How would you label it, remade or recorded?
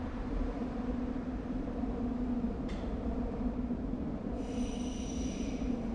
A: remade